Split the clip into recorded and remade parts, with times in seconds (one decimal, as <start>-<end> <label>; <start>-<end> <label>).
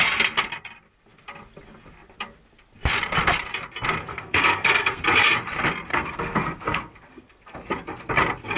0.0-4.1 recorded; 4.1-5.0 remade; 5.0-5.9 recorded; 5.9-7.4 remade; 7.4-8.6 recorded